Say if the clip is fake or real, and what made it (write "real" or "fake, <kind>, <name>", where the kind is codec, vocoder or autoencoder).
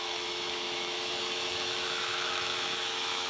fake, autoencoder, DAC-VAE